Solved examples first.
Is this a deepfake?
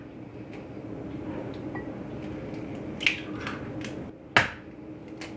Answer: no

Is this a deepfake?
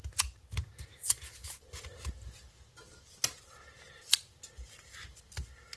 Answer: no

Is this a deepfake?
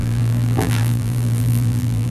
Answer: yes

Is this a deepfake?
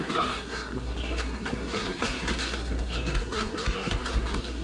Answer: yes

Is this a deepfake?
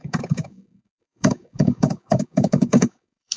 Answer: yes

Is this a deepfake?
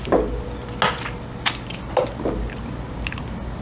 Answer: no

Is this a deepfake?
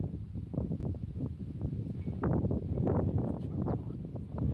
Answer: no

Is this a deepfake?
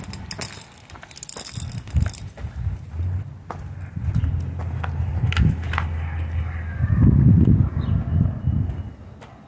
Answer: no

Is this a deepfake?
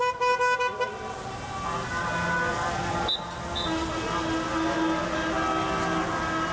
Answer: no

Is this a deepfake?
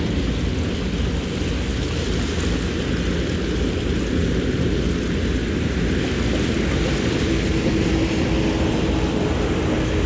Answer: no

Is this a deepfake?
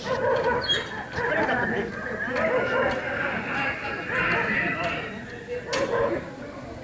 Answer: no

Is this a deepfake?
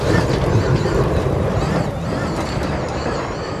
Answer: yes